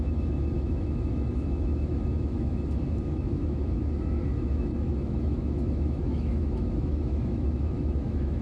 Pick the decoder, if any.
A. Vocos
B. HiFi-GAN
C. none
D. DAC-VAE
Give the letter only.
D